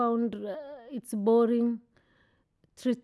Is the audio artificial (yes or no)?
no